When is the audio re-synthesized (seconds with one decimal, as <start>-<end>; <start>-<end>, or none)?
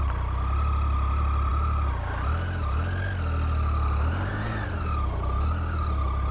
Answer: none